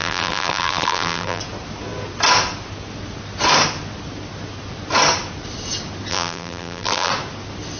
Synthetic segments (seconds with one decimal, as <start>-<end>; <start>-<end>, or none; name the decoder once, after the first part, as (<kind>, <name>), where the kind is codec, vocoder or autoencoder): 0.0-1.4 (vocoder, BigVGAN v2); 6.1-7.1